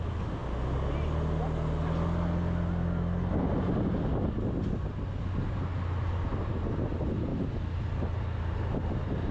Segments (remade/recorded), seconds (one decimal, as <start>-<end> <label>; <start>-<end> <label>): 0.0-9.3 recorded